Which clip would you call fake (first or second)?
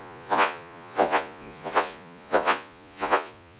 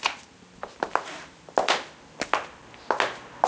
first